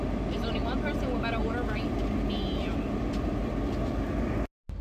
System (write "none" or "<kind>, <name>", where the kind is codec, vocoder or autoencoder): none